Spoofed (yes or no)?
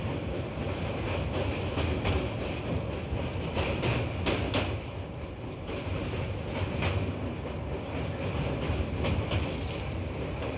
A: no